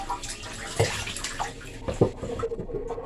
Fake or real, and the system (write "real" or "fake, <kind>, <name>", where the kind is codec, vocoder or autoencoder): real